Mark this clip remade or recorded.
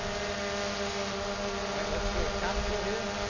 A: recorded